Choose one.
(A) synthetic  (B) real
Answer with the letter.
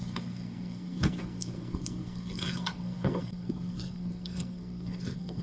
A